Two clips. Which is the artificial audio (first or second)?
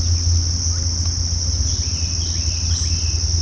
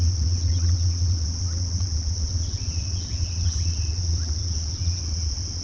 second